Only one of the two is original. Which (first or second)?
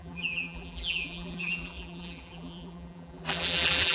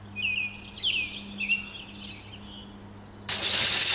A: second